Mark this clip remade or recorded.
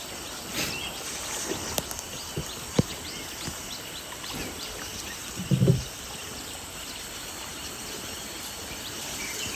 recorded